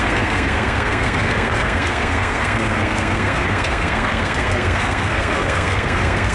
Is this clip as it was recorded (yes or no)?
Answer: no